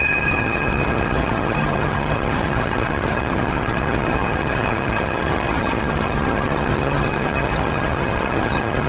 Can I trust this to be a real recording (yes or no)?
no